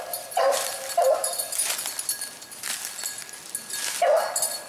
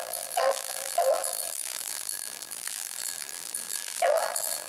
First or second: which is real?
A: first